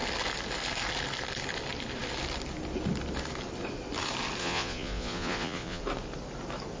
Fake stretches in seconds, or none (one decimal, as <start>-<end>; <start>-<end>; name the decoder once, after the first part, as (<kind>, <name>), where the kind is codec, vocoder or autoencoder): 4.4-5.8 (vocoder, Vocos)